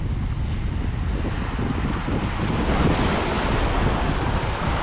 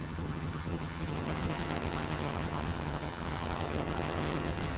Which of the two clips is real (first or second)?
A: first